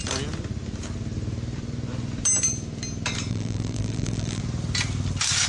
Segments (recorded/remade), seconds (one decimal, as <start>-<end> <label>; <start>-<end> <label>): 0.0-3.3 recorded; 3.3-4.4 remade; 4.4-5.5 recorded